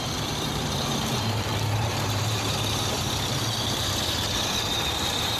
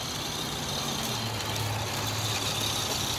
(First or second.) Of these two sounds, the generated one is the first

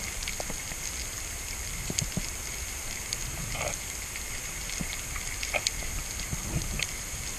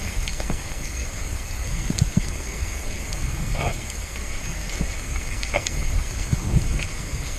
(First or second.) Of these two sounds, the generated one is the second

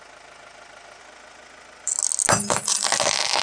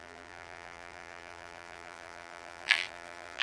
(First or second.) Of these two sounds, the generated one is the second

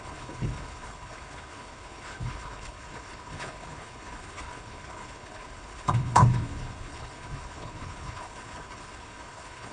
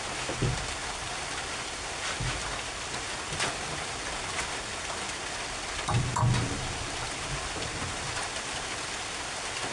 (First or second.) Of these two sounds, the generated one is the first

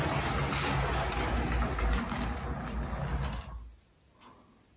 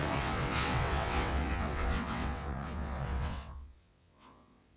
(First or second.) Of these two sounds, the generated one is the second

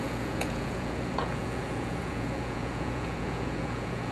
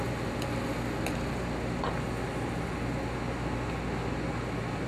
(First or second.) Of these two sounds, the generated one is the first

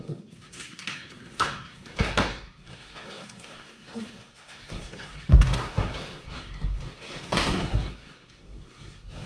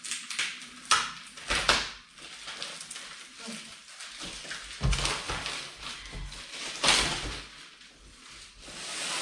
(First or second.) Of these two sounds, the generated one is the first